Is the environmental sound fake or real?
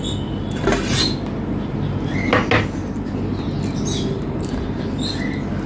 real